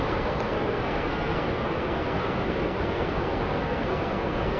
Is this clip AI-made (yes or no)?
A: yes